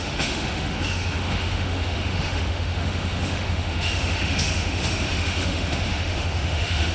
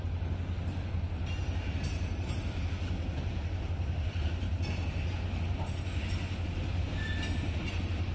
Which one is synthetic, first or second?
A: first